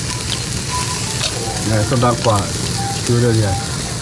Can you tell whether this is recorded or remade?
recorded